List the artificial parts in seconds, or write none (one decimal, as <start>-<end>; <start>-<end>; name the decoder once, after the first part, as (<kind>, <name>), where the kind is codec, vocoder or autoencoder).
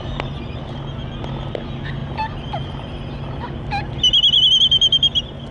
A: none